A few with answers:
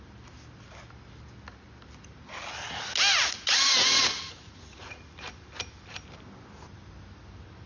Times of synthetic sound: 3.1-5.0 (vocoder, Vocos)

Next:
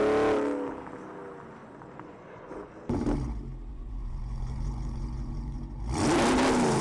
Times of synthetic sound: 1.6-2.7 (vocoder, Vocos); 3.7-5.6